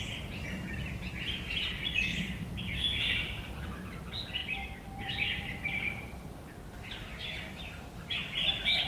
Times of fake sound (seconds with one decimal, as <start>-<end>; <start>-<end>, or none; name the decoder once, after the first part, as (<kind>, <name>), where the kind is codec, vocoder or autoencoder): 0.0-8.9 (vocoder, BigVGAN v2)

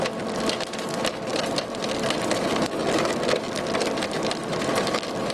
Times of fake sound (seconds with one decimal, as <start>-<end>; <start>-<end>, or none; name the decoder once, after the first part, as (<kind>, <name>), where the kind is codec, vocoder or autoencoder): 1.3-2.0 (vocoder, BigVGAN v2); 2.8-5.3

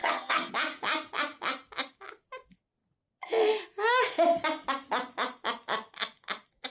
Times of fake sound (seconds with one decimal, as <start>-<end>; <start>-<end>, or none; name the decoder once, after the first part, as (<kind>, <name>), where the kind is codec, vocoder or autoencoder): 0.0-0.5 (vocoder, HiFi-GAN)

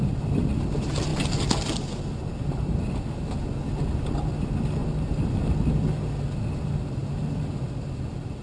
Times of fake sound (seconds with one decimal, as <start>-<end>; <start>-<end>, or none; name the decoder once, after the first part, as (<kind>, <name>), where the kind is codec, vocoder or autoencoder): none